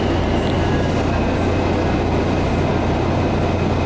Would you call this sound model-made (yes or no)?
no